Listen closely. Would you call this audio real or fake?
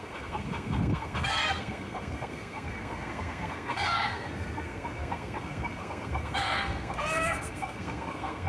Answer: fake